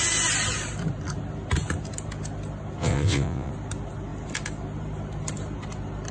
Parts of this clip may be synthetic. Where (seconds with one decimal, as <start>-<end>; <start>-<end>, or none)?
2.8-3.5